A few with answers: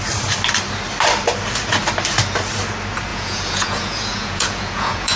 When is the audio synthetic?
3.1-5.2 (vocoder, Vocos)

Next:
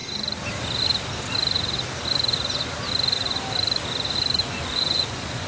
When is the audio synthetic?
4.4-5.5 (vocoder, Vocos)

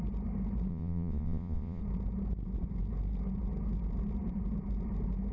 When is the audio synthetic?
0.7-1.8 (vocoder, Vocos)

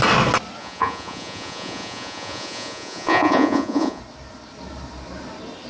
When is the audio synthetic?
0.6-4.0 (vocoder, Vocos)